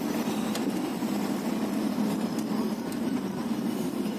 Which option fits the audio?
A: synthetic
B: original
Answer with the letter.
A